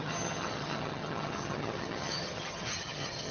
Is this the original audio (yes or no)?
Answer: no